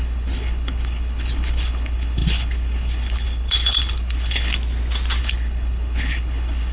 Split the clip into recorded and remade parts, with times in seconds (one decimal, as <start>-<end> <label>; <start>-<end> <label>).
0.0-4.5 remade; 4.5-5.2 recorded; 5.2-6.7 remade